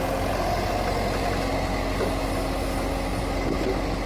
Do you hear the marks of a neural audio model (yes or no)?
no